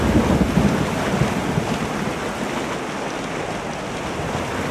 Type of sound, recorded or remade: recorded